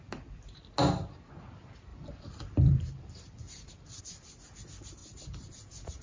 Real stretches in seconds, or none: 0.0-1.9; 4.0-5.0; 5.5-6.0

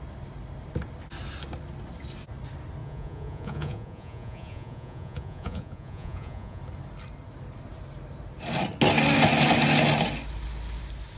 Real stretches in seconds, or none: 0.0-2.8; 6.6-11.2

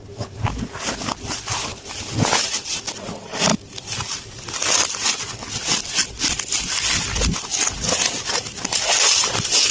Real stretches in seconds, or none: 0.0-9.7

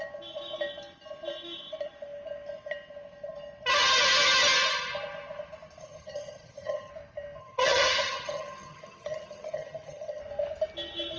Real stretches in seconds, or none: 0.0-5.8; 6.9-7.4; 10.2-11.2

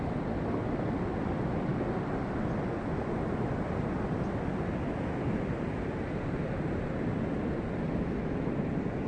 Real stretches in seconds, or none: 0.0-9.1

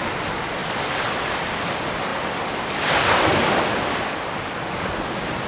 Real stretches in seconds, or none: 0.0-0.6; 1.3-3.3

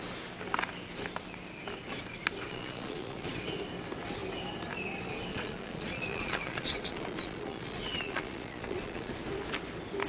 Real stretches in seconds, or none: 0.0-2.5; 3.3-5.3; 9.1-10.1